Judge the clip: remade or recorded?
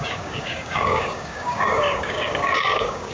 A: remade